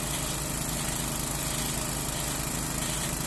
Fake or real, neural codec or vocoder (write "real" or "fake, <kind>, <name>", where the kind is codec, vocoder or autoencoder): real